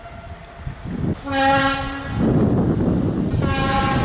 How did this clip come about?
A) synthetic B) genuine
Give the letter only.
B